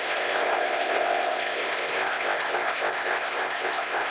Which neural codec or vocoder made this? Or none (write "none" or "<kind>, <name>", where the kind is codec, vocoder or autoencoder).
codec, ZipCodec